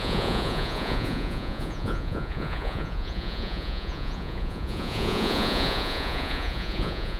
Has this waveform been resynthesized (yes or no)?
yes